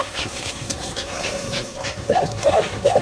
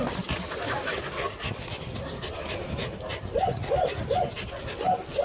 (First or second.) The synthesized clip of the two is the first